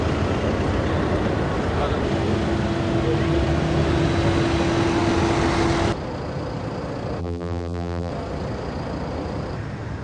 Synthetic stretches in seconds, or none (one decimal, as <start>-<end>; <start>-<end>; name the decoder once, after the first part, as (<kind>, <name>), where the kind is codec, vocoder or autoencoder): 7.2-8.1 (vocoder, BigVGAN v2)